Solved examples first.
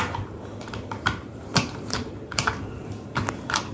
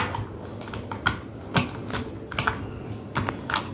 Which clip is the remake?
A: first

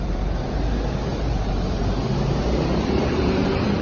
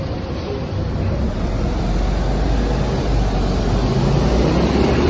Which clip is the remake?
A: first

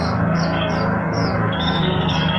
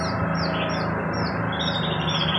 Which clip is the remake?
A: first